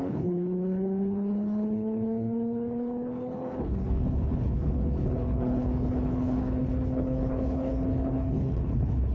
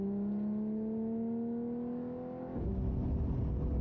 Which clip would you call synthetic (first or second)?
first